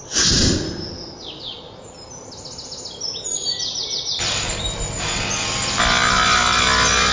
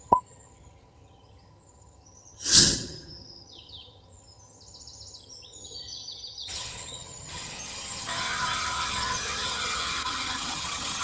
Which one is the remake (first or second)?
second